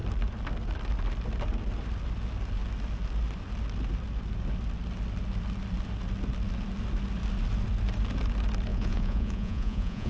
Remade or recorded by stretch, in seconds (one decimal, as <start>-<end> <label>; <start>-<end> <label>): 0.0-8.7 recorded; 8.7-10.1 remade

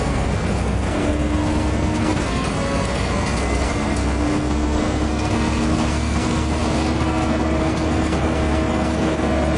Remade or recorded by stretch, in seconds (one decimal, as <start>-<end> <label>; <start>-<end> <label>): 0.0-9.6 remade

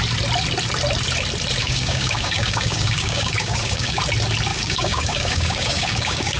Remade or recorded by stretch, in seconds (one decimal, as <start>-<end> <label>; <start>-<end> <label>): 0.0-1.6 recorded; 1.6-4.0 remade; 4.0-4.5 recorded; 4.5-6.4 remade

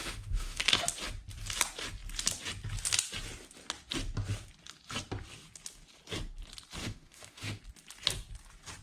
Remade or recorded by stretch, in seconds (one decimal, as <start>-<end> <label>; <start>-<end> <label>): 0.0-0.6 remade; 0.6-6.8 recorded; 6.8-7.6 remade; 7.6-8.8 recorded

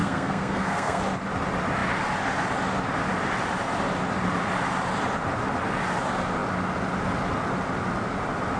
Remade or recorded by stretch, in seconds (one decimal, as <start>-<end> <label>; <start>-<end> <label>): 0.0-1.0 remade; 1.0-8.6 recorded